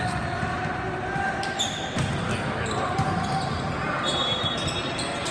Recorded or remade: recorded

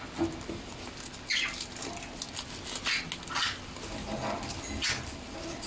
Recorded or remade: recorded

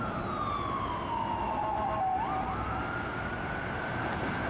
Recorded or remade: recorded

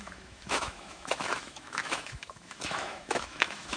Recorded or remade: remade